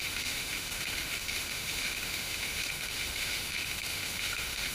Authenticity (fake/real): fake